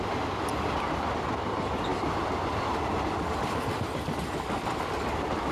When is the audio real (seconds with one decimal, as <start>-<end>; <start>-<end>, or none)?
0.0-1.9